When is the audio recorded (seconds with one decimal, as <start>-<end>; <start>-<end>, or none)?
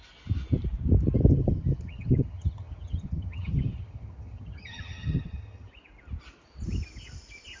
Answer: 0.0-1.3; 5.7-7.6